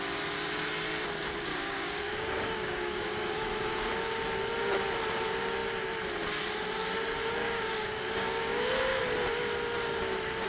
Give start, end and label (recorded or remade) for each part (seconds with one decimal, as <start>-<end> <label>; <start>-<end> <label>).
0.0-1.5 recorded; 1.5-3.9 remade; 3.9-7.4 recorded; 7.4-9.0 remade; 9.0-10.5 recorded